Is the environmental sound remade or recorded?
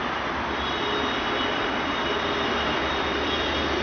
recorded